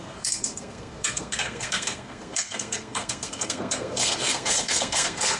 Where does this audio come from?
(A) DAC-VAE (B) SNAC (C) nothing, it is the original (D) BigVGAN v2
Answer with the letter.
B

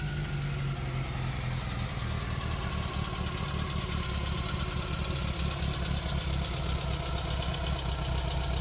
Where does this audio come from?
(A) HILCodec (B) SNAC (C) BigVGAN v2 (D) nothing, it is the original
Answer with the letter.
D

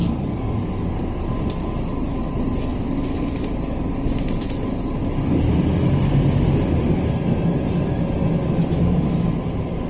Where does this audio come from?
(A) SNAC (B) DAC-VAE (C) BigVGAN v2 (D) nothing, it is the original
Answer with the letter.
D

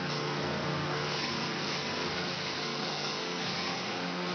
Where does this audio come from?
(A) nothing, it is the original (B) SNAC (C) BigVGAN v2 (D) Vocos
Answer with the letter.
B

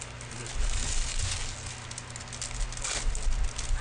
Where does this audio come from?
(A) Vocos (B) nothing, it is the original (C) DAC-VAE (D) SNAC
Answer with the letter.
B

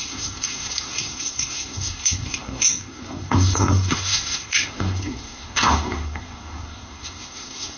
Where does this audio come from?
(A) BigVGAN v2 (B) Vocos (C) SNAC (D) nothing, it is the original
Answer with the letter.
C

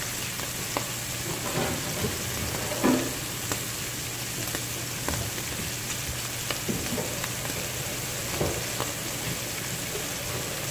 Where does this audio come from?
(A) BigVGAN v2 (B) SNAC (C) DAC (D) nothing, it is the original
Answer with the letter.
D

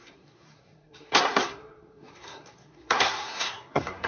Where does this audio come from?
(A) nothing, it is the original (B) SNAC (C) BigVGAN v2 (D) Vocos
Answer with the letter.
B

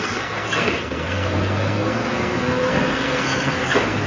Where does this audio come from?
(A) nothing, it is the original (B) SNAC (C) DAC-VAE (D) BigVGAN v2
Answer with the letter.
B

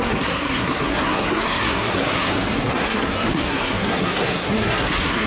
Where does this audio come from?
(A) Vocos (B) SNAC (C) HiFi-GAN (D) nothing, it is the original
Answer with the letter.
B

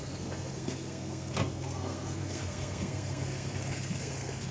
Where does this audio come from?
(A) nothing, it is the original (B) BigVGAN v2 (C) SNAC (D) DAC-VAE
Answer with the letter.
C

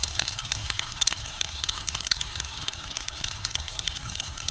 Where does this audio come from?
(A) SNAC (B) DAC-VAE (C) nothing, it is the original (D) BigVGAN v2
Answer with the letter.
A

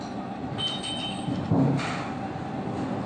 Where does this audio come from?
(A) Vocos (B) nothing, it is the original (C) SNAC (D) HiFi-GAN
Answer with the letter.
B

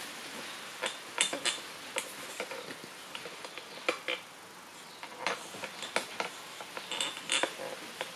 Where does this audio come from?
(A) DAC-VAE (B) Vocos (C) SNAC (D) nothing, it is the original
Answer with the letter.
D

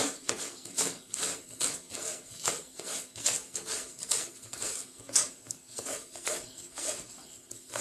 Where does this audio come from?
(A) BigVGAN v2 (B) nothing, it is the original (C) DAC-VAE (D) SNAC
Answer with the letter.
D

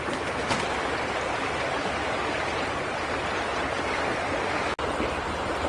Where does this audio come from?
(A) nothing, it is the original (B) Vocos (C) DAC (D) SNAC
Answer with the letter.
A